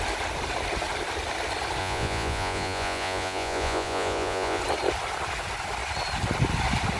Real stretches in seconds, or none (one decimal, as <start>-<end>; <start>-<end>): 0.0-1.8; 4.6-7.0